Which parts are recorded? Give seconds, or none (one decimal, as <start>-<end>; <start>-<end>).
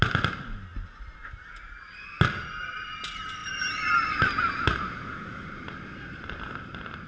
0.0-7.1